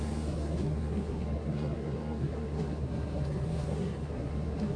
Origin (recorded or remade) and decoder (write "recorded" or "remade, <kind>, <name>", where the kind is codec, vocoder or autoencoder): remade, codec, SNAC